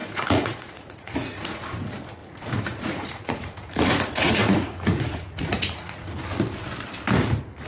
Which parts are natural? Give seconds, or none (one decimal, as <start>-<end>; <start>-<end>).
1.6-2.2; 6.2-7.7

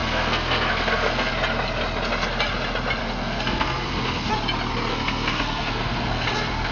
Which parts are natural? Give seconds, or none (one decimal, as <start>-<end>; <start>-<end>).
1.3-3.0; 4.3-4.9

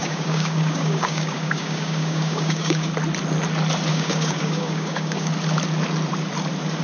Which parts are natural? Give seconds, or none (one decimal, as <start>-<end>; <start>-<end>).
2.9-3.9; 5.3-6.8